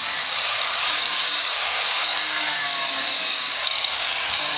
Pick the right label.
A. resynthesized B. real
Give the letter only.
A